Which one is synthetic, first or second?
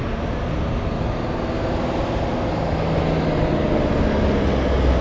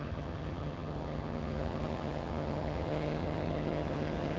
second